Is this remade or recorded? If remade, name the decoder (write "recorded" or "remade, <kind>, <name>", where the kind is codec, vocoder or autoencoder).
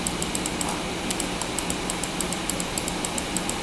recorded